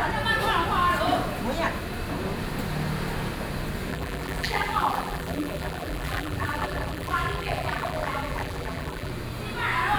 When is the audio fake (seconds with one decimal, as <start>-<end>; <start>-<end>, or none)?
3.9-9.1